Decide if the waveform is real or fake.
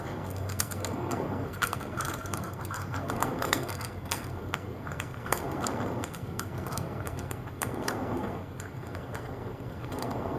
fake